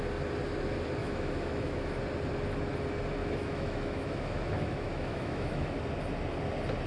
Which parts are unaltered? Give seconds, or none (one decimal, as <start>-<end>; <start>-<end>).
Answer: 0.0-1.0; 2.0-3.2; 5.8-6.9